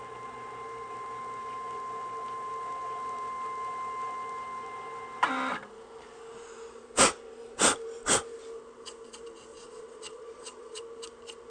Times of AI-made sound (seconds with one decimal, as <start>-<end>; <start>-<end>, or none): 9.5-10.8